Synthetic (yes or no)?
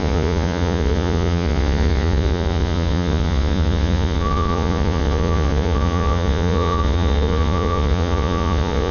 yes